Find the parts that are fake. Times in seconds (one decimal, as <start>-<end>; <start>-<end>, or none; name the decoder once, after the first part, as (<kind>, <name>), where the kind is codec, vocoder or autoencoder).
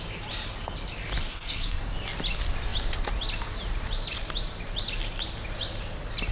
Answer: 1.3-1.8 (codec, SNAC)